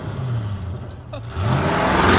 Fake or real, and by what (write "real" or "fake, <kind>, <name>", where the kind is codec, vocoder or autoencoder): real